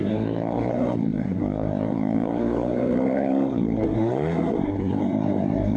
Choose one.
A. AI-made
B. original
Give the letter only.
A